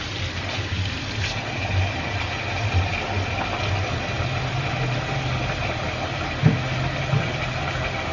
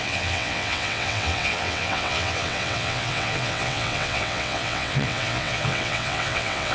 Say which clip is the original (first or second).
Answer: first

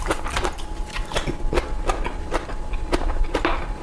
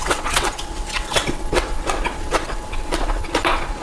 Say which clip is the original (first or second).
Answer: first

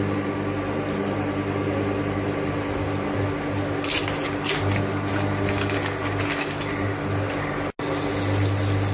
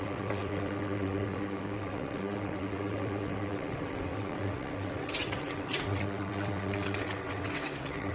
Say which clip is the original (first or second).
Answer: first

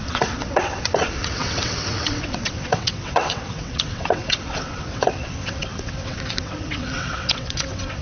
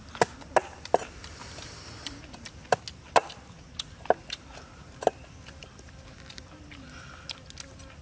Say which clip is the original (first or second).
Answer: second